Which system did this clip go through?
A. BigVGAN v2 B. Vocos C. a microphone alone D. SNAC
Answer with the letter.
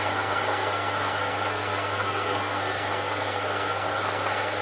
D